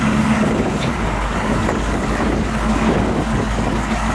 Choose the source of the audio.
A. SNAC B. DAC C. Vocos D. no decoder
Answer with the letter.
B